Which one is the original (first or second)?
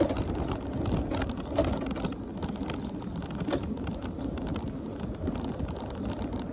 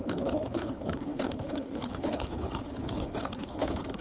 first